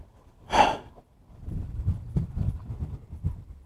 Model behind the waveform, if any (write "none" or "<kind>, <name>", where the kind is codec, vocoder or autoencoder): none